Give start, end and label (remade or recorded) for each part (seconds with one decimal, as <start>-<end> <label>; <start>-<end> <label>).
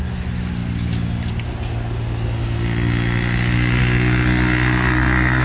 0.0-5.4 recorded